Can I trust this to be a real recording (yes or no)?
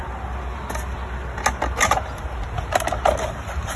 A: yes